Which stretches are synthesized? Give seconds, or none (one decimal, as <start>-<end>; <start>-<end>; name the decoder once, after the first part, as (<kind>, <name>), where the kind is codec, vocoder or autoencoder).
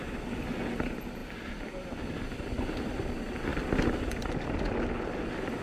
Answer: none